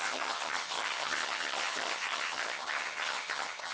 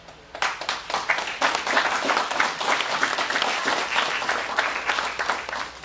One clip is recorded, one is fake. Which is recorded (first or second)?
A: second